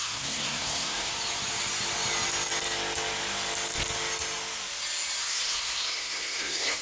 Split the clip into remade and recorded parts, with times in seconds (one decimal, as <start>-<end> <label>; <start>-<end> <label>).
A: 0.0-1.1 remade; 1.1-5.2 recorded; 5.2-6.8 remade